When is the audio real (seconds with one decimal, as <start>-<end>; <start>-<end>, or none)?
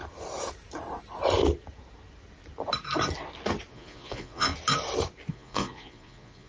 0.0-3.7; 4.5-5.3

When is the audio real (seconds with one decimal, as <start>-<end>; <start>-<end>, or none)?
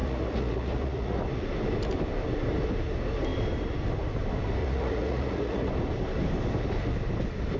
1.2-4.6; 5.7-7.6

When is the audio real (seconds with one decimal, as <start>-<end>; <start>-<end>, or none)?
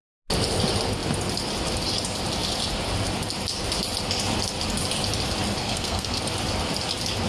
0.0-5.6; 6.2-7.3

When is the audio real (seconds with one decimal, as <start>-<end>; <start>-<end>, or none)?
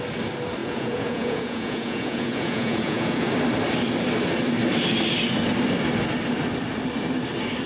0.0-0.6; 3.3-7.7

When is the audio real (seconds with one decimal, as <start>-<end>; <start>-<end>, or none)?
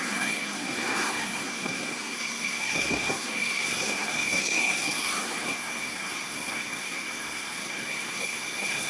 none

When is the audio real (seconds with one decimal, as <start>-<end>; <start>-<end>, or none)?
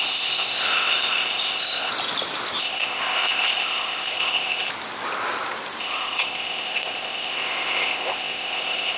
1.9-2.6; 4.7-5.8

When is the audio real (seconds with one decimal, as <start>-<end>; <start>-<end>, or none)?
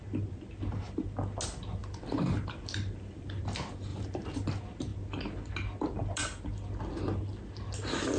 0.0-1.8; 3.4-3.9; 4.5-8.2